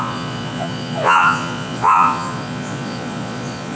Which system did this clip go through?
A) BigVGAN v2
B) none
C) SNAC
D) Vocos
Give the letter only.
D